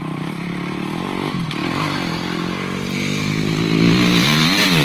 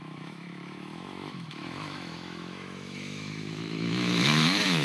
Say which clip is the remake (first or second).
second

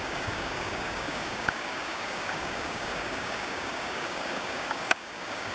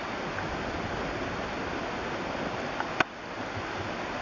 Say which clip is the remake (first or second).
first